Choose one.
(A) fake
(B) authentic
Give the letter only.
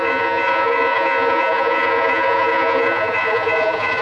A